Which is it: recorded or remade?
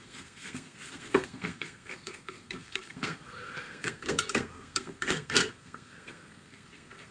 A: remade